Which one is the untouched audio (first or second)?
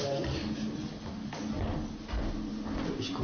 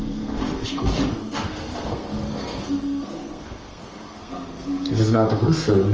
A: first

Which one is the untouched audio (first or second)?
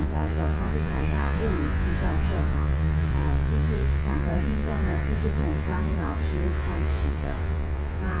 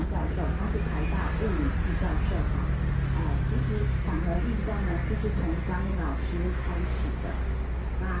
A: second